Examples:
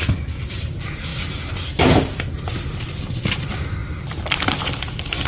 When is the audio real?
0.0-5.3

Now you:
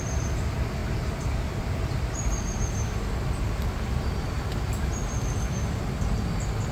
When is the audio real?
0.0-6.7